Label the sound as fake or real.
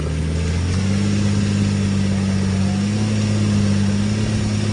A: real